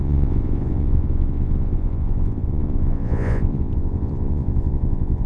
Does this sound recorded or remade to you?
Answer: remade